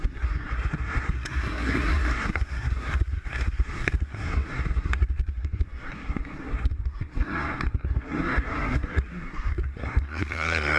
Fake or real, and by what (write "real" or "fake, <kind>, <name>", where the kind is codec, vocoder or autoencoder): fake, codec, SNAC